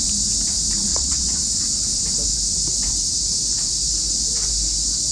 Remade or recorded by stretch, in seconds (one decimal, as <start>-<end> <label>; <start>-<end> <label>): 0.0-0.9 recorded; 0.9-1.5 remade; 1.5-5.1 recorded